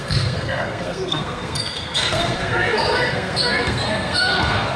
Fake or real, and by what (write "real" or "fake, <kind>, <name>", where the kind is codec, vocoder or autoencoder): fake, codec, SNAC